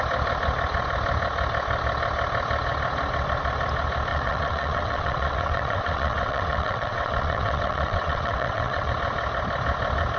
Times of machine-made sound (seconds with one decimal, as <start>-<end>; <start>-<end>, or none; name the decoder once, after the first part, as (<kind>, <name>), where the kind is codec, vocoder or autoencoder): 4.1-8.9 (vocoder, WaveNeXt)